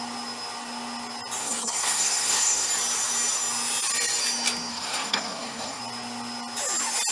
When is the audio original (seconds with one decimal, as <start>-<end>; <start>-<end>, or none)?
0.0-1.4; 2.7-4.7; 5.8-7.1